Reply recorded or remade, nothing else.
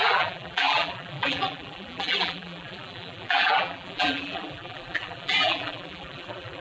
remade